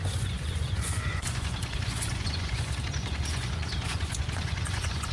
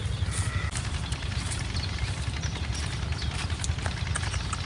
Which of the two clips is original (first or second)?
second